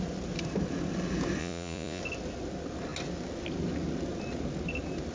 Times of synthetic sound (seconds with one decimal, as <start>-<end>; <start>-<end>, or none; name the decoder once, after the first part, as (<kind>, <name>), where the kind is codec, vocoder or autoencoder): 1.4-2.0 (vocoder, Vocos)